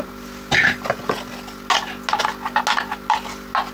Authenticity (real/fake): real